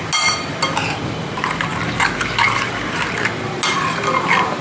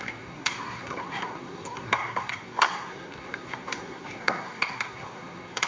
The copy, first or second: second